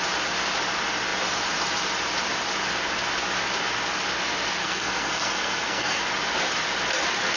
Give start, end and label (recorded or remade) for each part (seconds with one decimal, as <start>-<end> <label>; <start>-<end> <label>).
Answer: 0.0-4.6 recorded; 4.6-6.0 remade; 6.0-7.4 recorded